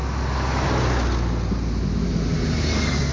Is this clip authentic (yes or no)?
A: yes